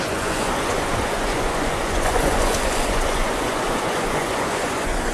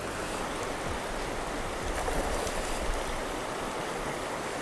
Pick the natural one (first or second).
second